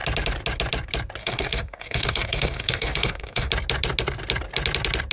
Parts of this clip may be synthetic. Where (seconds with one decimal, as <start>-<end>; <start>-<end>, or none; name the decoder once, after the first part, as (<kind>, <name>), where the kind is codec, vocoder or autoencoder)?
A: 1.2-3.5 (codec, DAC)